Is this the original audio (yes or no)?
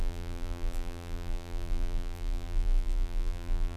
no